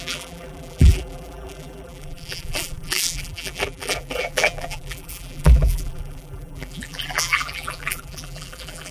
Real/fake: fake